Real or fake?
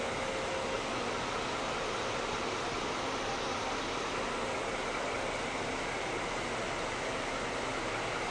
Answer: real